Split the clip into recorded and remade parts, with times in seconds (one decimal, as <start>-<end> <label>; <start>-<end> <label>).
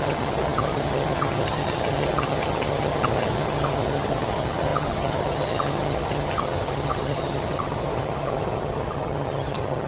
0.0-9.9 remade